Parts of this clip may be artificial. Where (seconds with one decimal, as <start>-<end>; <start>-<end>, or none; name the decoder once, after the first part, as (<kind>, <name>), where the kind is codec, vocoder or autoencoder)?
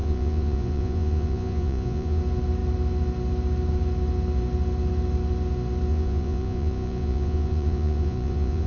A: 0.0-2.2 (vocoder, Vocos); 5.9-8.7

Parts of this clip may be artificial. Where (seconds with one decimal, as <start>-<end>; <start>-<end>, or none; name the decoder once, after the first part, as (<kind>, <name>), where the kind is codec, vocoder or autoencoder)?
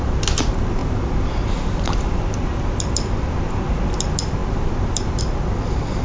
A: none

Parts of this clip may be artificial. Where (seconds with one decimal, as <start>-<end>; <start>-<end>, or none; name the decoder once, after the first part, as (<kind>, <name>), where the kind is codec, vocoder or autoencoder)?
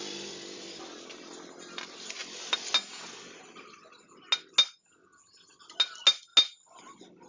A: none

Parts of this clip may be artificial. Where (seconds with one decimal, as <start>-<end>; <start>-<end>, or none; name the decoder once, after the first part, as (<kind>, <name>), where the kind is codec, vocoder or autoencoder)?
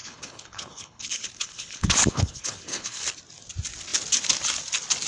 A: 0.0-3.0 (codec, HILCodec)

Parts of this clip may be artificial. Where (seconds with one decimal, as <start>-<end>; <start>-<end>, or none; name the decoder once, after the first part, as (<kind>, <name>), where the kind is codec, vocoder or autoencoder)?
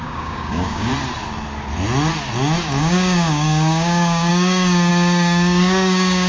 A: 0.0-0.9 (codec, DAC); 2.8-6.3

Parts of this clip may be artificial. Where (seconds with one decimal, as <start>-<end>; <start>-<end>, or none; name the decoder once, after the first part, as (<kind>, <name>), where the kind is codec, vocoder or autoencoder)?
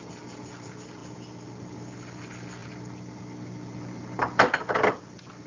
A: none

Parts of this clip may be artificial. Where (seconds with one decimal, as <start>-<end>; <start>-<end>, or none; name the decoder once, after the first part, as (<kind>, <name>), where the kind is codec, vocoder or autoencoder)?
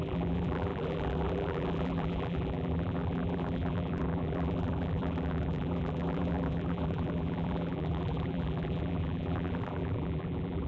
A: 0.0-10.7 (vocoder, BigVGAN v2)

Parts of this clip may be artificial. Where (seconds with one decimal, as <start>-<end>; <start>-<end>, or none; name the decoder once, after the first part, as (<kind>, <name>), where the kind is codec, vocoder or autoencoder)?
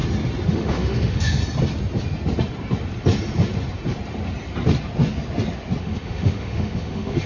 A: 0.5-1.4 (autoencoder, DAC-VAE); 5.8-7.3